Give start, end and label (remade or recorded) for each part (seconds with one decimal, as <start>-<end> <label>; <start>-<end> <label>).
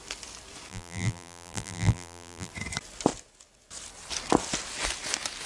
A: 0.0-0.7 recorded; 0.7-2.5 remade; 2.5-5.5 recorded